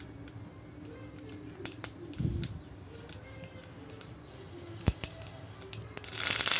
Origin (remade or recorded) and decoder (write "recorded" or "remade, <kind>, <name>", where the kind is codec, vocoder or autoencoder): recorded